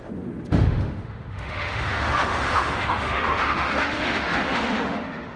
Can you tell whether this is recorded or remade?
remade